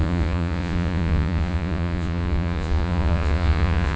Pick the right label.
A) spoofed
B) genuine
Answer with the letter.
A